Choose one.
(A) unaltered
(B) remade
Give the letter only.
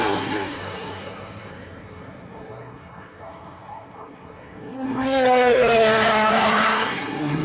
B